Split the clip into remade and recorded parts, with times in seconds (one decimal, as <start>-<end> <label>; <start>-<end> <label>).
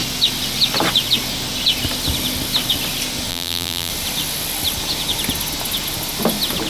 0.0-3.3 recorded; 3.3-3.9 remade; 3.9-6.7 recorded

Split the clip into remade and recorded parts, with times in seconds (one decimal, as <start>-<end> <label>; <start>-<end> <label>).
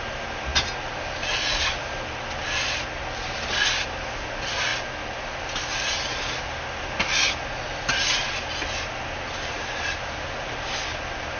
0.0-11.4 recorded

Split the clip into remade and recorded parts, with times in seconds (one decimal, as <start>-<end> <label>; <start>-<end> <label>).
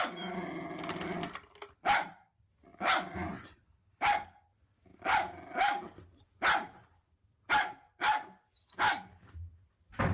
0.0-10.1 recorded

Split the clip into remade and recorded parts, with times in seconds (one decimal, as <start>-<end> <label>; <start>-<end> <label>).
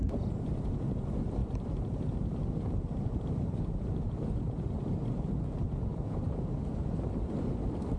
0.0-1.4 recorded; 1.4-4.6 remade; 4.6-5.9 recorded; 5.9-7.3 remade; 7.3-8.0 recorded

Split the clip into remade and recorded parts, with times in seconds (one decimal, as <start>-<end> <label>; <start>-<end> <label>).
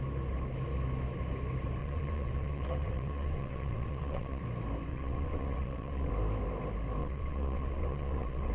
0.0-1.8 recorded; 1.8-4.4 remade; 4.4-4.9 recorded; 4.9-6.1 remade; 6.1-7.0 recorded; 7.0-8.5 remade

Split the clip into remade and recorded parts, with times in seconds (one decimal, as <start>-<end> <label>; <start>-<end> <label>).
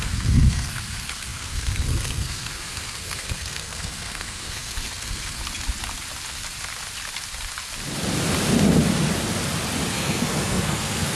0.0-5.4 remade; 5.4-9.9 recorded; 9.9-11.2 remade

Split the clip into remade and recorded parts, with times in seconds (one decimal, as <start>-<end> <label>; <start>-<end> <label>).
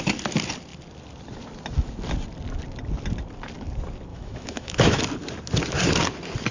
0.0-4.1 recorded; 4.1-5.0 remade; 5.0-6.5 recorded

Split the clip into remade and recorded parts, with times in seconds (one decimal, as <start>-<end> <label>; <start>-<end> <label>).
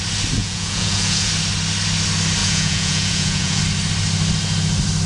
0.0-0.4 recorded; 0.4-1.3 remade; 1.3-2.4 recorded; 2.4-3.6 remade; 3.6-5.1 recorded